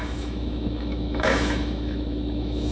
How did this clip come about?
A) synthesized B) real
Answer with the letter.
A